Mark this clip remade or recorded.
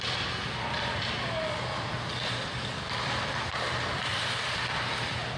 recorded